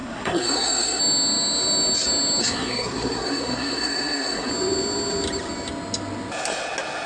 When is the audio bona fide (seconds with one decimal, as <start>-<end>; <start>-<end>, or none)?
1.0-2.4; 4.5-7.1